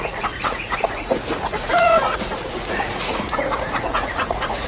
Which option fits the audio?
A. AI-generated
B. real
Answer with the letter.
A